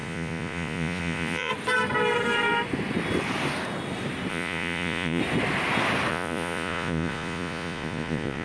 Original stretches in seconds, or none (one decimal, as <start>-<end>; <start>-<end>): 1.5-4.3; 5.2-6.1